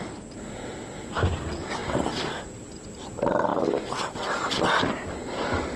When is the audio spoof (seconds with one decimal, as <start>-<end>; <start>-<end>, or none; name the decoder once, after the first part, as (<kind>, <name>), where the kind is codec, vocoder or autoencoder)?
none